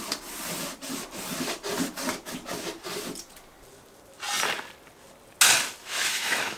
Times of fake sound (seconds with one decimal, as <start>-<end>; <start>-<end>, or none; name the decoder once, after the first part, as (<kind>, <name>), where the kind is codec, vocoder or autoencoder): 5.8-6.6 (autoencoder, DAC-VAE)